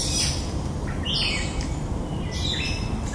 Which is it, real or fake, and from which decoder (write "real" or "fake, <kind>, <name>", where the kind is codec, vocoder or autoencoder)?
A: real